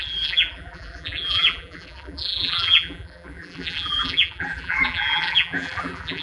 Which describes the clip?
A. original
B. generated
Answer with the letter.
B